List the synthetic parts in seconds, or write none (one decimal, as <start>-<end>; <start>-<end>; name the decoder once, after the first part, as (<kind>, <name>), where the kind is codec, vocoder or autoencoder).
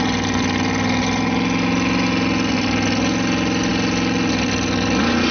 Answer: none